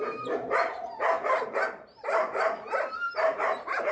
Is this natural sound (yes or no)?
no